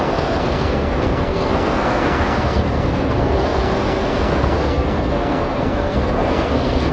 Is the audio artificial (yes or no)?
yes